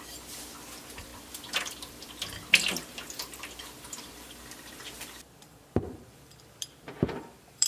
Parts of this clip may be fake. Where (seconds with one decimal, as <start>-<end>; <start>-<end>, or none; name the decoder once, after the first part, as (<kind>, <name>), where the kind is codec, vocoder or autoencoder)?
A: 0.0-7.7 (vocoder, BigVGAN v2)